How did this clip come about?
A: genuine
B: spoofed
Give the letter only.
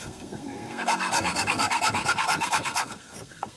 B